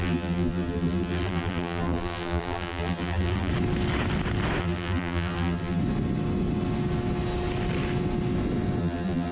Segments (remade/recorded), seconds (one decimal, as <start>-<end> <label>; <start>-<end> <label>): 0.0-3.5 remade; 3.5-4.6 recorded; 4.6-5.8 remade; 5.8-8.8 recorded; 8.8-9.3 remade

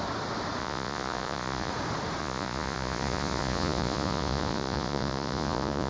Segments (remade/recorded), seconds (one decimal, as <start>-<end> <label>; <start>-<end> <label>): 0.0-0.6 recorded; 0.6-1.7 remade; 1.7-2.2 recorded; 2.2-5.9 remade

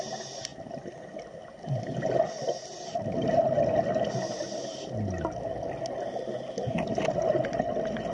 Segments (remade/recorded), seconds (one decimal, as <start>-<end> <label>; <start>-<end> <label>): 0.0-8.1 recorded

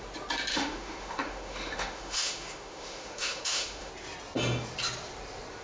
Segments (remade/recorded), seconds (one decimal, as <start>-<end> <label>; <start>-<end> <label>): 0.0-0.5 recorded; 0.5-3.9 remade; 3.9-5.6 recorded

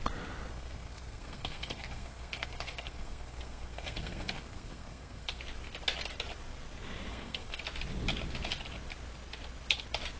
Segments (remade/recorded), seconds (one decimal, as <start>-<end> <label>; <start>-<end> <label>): 0.0-0.5 recorded; 0.5-5.4 remade; 5.4-7.1 recorded; 7.1-7.6 remade; 7.6-10.2 recorded

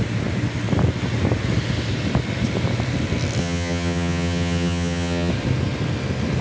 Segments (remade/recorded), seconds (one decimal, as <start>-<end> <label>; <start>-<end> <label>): 0.0-3.4 recorded; 3.4-5.3 remade; 5.3-6.4 recorded

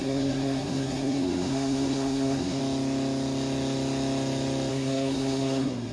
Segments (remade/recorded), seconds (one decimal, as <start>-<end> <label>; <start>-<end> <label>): 0.0-2.6 remade; 2.6-4.7 recorded; 4.7-5.9 remade